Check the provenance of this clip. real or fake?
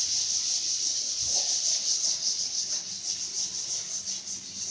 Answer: real